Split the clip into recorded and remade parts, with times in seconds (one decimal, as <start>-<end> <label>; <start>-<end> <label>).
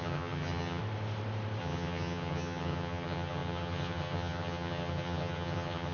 0.0-0.8 remade; 0.8-1.6 recorded; 1.6-5.9 remade